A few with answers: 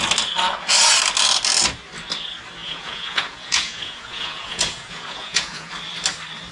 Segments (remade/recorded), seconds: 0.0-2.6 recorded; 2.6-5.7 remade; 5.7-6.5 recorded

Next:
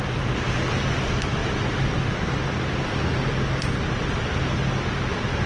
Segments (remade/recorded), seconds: 0.0-5.5 recorded

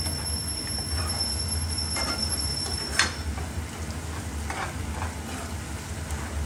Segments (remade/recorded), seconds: 0.0-6.5 recorded